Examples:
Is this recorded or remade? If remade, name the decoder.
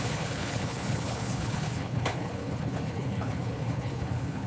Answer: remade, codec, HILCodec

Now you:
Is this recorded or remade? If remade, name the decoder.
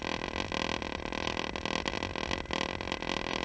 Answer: recorded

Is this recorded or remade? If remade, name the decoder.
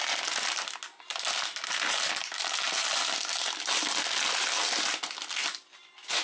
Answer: recorded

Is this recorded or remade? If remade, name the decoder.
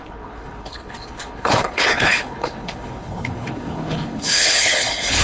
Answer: remade, codec, HILCodec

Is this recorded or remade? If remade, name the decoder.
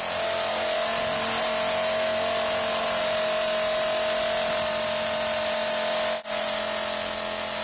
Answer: recorded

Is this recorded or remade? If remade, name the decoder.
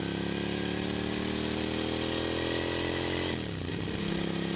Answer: recorded